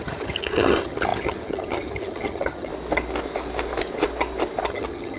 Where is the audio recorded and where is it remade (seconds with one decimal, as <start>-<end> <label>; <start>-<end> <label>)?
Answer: 0.0-2.7 remade; 2.7-4.7 recorded; 4.7-5.2 remade